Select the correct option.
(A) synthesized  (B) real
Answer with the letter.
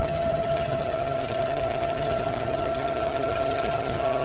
A